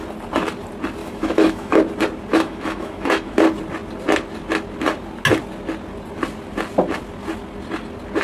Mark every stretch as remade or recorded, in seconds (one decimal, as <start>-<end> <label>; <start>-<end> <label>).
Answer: 0.0-1.0 recorded; 1.0-1.8 remade; 1.8-2.3 recorded; 2.3-3.4 remade; 3.4-8.2 recorded